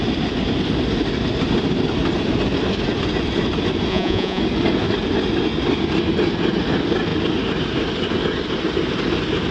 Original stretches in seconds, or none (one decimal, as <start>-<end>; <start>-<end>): 0.0-3.9; 4.4-9.5